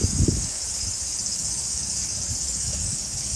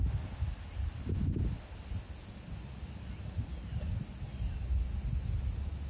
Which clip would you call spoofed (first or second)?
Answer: first